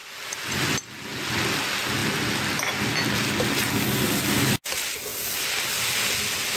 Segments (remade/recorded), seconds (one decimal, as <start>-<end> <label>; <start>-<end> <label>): 0.0-0.9 remade; 0.9-5.1 recorded; 5.1-5.7 remade; 5.7-6.6 recorded